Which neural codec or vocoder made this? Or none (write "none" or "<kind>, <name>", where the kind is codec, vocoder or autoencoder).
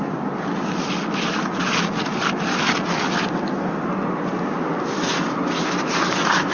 none